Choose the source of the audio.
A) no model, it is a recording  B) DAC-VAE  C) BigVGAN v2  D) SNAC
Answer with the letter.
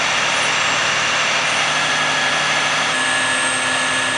A